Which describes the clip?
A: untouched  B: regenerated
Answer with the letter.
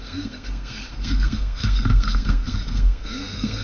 B